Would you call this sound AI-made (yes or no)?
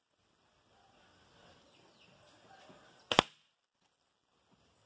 no